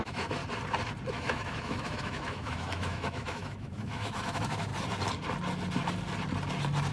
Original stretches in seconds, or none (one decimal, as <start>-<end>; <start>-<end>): 0.4-1.1; 4.7-6.9